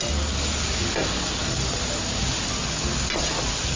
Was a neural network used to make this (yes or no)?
no